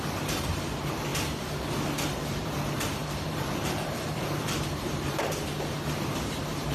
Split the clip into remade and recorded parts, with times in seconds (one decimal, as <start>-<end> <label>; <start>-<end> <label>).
0.0-1.1 remade; 1.1-2.1 recorded; 2.1-6.7 remade